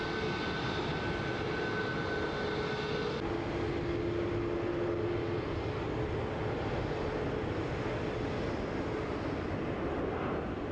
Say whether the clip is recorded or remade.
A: recorded